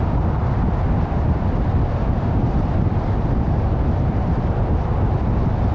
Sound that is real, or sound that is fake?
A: real